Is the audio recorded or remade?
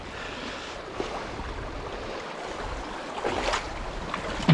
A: recorded